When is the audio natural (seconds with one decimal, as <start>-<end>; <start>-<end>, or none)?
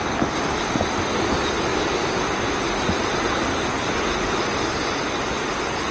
0.0-1.7; 2.5-5.9